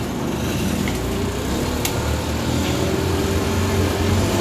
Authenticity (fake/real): real